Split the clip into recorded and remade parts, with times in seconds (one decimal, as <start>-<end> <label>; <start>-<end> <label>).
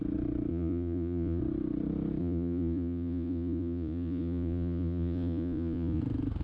0.0-0.5 recorded; 0.5-1.4 remade; 1.4-2.2 recorded; 2.2-6.0 remade; 6.0-6.4 recorded